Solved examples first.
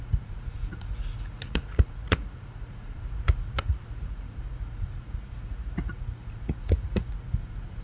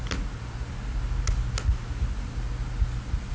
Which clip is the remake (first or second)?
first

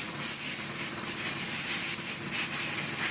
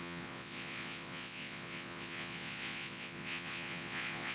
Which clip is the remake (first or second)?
second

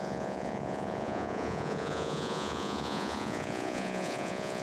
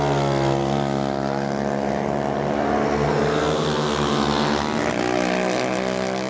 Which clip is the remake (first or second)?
first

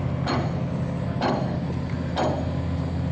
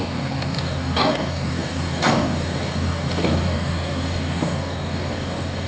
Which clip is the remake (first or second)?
second